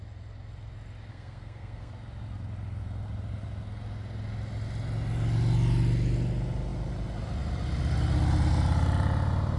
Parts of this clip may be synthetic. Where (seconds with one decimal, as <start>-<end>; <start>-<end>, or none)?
1.1-1.9